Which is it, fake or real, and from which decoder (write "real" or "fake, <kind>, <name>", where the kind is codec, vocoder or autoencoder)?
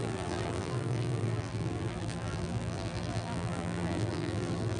fake, vocoder, BigVGAN v2